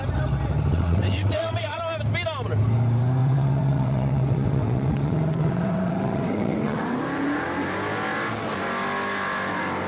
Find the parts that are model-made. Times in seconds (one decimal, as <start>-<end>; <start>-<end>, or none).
0.7-1.8; 3.2-7.0